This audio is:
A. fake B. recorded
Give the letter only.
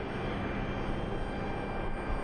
B